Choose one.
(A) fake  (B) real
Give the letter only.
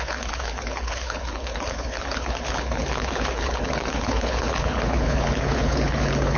A